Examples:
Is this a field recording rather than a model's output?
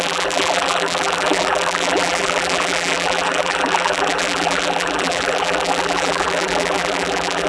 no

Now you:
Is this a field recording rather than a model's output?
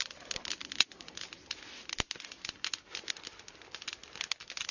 yes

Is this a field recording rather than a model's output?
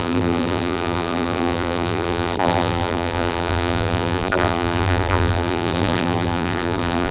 no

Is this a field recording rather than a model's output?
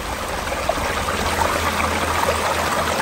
yes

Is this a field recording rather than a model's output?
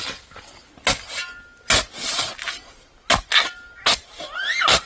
yes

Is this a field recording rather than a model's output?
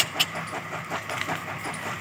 yes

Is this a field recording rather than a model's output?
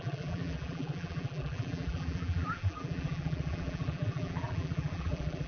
no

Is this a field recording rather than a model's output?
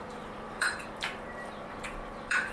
no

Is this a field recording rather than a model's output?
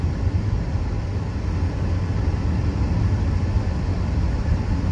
yes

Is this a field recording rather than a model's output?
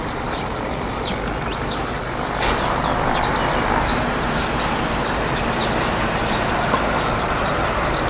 yes